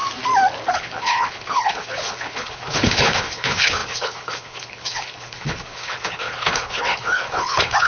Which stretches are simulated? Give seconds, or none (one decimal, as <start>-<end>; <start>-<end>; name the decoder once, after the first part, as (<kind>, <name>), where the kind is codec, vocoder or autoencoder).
0.7-7.9 (codec, HILCodec)